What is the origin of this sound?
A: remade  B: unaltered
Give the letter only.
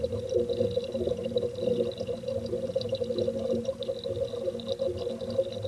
B